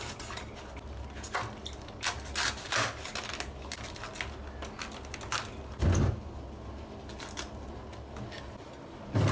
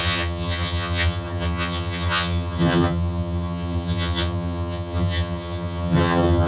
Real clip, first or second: first